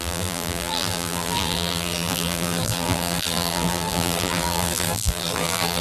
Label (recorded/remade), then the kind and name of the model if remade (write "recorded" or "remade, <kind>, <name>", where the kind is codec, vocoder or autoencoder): remade, vocoder, BigVGAN v2